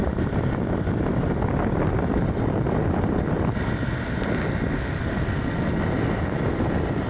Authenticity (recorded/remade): recorded